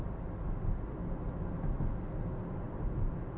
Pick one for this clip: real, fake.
real